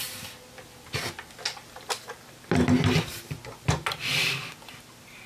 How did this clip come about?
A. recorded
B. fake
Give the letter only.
A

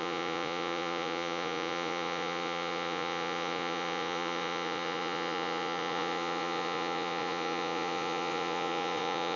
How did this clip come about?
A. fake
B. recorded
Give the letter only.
A